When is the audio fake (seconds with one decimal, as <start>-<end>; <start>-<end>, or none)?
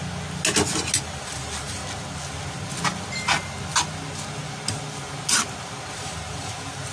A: 1.0-1.8; 5.9-6.9